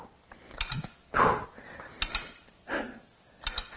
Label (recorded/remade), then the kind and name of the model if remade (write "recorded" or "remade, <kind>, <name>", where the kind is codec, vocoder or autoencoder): recorded